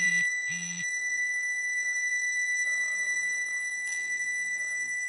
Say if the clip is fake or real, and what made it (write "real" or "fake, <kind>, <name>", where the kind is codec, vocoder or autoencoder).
fake, vocoder, BigVGAN v2